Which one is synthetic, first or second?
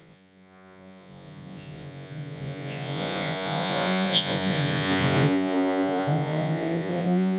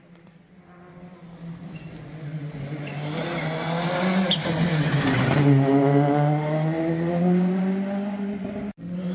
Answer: first